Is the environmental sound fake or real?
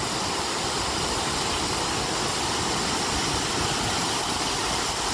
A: real